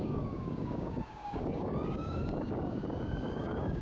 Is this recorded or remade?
remade